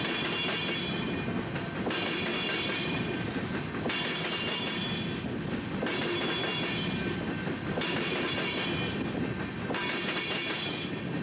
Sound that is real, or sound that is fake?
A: real